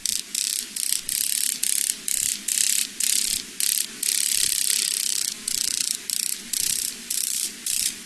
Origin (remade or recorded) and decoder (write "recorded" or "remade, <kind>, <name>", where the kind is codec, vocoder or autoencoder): recorded